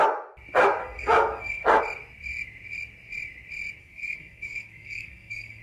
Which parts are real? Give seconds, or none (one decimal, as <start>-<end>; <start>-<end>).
0.0-0.8; 1.8-3.8